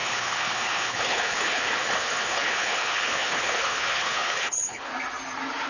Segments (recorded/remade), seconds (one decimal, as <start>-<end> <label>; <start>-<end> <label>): 0.0-4.9 remade; 4.9-5.7 recorded